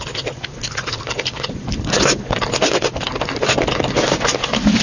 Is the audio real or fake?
real